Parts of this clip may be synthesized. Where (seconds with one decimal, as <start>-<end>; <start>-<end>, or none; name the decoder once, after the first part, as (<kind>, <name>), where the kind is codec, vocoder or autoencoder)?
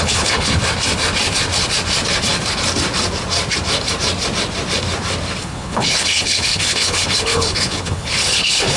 0.0-0.6 (codec, HILCodec); 5.4-8.8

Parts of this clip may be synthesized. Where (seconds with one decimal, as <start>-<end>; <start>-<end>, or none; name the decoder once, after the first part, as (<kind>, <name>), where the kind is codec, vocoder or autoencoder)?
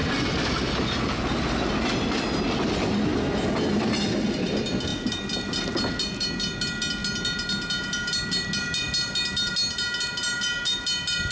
none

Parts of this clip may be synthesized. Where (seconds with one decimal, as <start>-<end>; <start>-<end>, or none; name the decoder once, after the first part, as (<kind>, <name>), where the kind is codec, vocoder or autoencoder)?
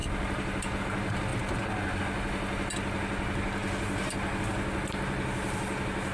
none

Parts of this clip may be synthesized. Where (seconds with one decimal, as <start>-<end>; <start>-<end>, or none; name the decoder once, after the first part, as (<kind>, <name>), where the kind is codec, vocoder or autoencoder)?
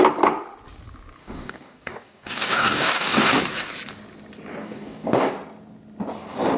1.2-3.4 (codec, DAC); 4.5-5.3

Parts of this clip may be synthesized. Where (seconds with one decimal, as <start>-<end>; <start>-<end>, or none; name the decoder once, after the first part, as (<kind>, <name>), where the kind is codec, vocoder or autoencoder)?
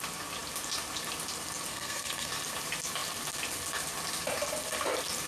1.7-2.3 (codec, SNAC)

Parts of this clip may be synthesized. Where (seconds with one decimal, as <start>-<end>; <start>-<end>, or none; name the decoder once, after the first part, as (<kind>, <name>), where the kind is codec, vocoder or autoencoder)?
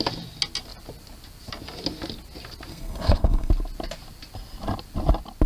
2.7-3.5 (codec, SNAC)